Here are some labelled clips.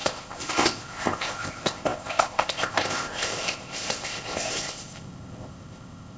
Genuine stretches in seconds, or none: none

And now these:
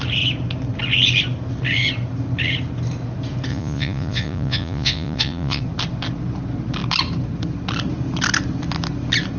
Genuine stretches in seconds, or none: 0.0-3.5; 5.6-9.4

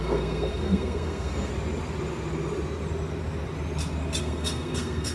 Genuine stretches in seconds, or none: 1.5-4.2

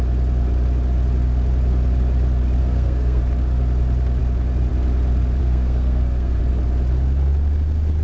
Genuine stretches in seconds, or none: 0.0-2.6; 3.2-5.4; 6.4-8.0

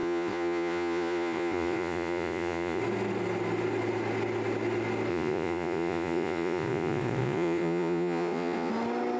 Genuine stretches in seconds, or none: 2.8-5.1; 8.7-9.2